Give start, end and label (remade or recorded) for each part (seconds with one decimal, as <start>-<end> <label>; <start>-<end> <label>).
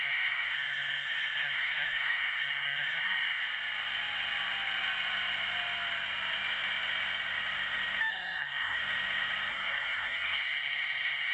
0.0-3.4 remade; 3.4-8.1 recorded; 8.1-8.8 remade; 8.8-9.5 recorded; 9.5-11.3 remade